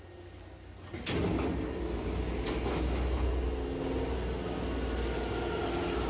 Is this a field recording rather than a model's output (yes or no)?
yes